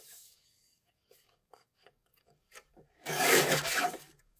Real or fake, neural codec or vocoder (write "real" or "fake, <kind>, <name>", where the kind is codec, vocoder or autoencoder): fake, codec, DAC